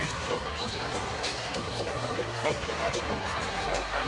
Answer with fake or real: fake